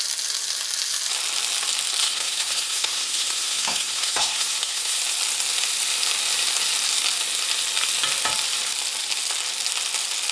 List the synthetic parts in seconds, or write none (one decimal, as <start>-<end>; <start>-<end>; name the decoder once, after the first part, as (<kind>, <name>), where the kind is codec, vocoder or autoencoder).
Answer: 2.0-5.0 (codec, SNAC)